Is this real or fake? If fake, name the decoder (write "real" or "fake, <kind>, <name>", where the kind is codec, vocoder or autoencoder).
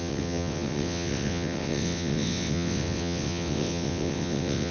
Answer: fake, vocoder, WaveNeXt